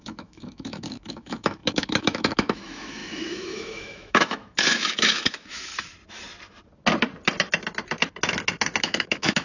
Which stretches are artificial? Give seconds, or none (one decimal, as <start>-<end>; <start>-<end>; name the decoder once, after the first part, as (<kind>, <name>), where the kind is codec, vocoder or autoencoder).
0.0-5.7 (autoencoder, DAC-VAE); 8.8-9.4